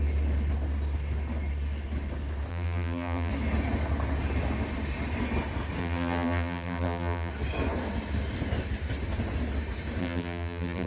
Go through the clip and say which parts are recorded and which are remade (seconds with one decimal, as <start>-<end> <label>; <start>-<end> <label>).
0.0-2.5 recorded; 2.5-3.3 remade; 3.3-5.8 recorded; 5.8-7.3 remade; 7.3-10.0 recorded; 10.0-10.9 remade